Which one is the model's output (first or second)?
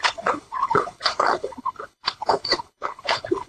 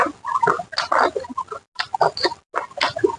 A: first